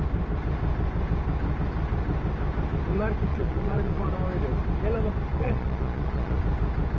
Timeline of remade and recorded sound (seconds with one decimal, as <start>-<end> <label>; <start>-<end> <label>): 0.0-3.3 recorded; 3.3-4.1 remade; 4.1-5.3 recorded; 5.3-6.4 remade; 6.4-7.0 recorded